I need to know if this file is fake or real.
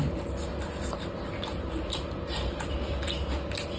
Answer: real